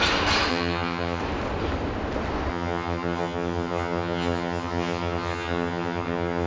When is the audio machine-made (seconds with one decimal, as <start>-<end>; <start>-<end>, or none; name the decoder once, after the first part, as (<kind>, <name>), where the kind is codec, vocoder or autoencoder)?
0.5-1.2 (vocoder, HiFi-GAN); 2.5-6.5